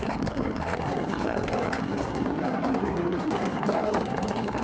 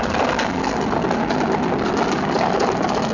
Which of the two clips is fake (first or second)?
first